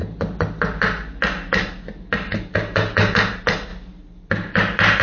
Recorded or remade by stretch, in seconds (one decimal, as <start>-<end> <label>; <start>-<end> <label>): 0.0-3.7 recorded; 3.7-5.0 remade